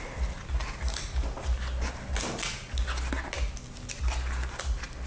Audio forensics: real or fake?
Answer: real